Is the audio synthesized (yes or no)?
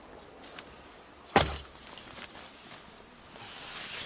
no